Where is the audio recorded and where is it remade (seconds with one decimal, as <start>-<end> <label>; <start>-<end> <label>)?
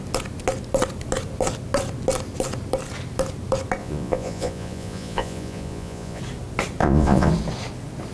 0.0-3.8 recorded; 3.8-6.2 remade; 6.2-6.8 recorded; 6.8-7.3 remade; 7.3-8.1 recorded